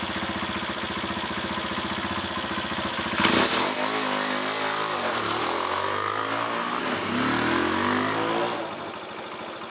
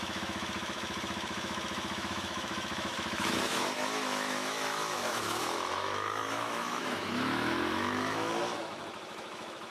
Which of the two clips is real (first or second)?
first